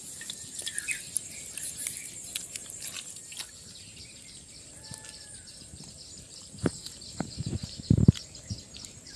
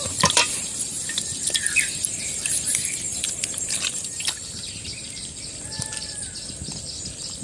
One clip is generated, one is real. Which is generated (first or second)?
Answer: second